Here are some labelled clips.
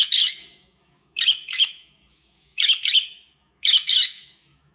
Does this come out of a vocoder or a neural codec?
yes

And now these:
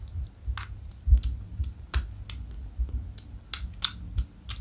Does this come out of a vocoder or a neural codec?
no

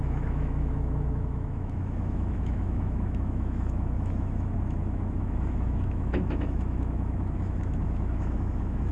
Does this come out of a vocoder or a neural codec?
yes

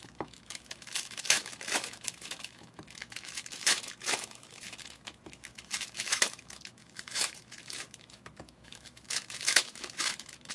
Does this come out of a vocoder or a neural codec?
yes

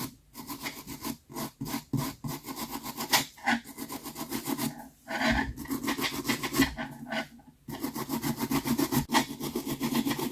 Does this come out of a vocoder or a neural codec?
no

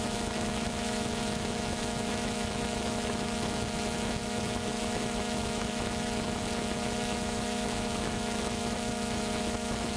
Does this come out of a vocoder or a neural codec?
yes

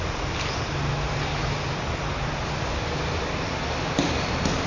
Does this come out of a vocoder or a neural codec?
no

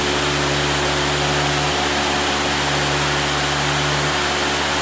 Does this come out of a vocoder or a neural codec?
no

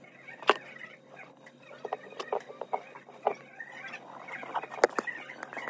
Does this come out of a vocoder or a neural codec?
no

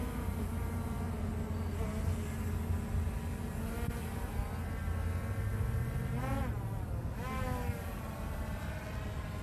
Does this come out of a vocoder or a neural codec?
no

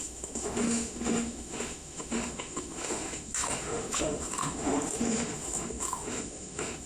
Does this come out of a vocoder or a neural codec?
yes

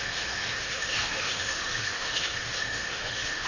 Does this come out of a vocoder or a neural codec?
yes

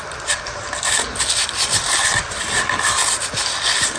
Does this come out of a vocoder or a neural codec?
no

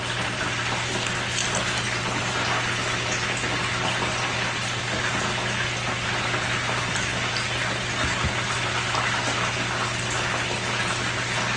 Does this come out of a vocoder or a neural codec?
no